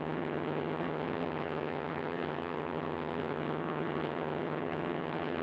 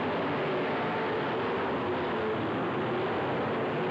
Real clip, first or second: second